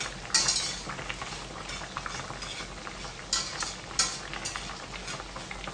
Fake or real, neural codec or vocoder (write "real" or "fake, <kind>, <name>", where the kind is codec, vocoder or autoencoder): real